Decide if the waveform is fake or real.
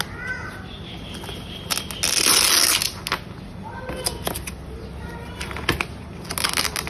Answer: real